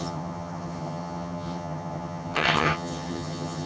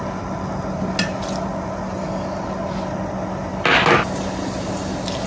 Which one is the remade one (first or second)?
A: first